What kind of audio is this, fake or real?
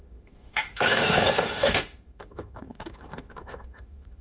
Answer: fake